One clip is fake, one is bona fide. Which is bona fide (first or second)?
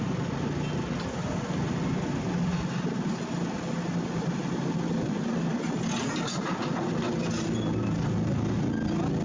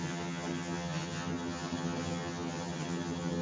first